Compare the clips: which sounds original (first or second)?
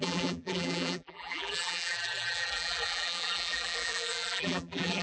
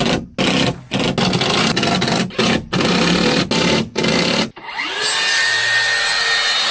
second